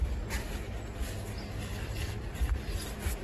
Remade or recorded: recorded